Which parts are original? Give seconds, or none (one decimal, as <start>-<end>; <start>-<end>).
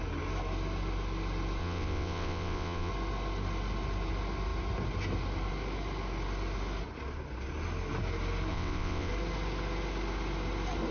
0.0-1.6; 2.9-8.5; 9.1-10.9